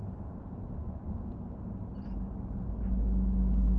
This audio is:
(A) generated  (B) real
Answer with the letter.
B